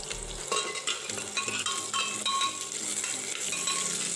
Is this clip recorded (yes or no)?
yes